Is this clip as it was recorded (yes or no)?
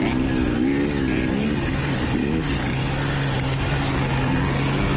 yes